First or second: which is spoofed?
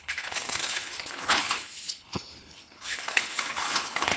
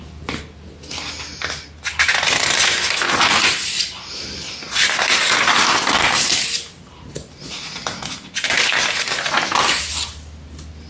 first